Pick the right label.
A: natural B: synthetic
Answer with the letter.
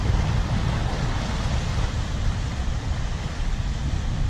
A